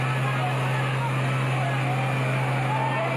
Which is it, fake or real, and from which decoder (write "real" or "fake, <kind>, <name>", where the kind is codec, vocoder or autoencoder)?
real